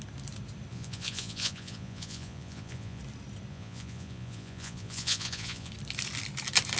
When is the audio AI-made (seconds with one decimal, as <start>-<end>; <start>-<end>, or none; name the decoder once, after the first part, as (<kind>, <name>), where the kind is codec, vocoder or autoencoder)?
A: 0.7-3.0 (vocoder, Vocos); 3.5-5.7